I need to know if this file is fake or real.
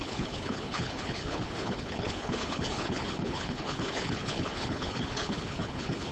fake